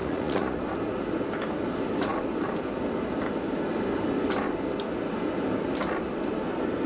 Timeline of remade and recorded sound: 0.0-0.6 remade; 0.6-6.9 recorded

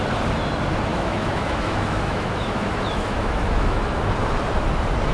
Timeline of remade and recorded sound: 0.0-0.9 recorded; 0.9-4.0 remade; 4.0-5.1 recorded

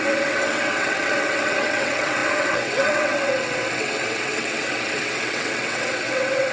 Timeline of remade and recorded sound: 0.0-6.5 remade

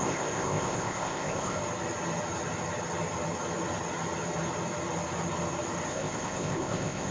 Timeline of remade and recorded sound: 0.0-1.6 remade; 1.6-5.9 recorded; 5.9-7.1 remade

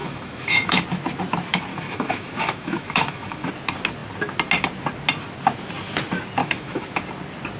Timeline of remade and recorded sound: 0.0-0.8 remade; 0.8-1.7 recorded; 1.7-3.5 remade; 3.5-6.4 recorded; 6.4-7.0 remade; 7.0-7.6 recorded

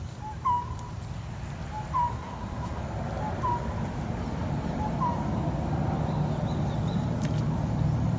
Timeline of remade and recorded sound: 0.0-2.1 recorded; 2.1-2.8 remade; 2.8-8.2 recorded

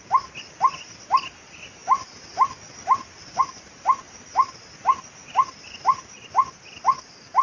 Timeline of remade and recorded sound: 0.0-7.4 recorded

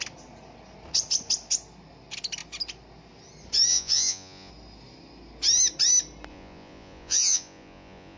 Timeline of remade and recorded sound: 0.0-3.7 recorded; 3.7-4.5 remade; 4.5-6.3 recorded; 6.3-8.2 remade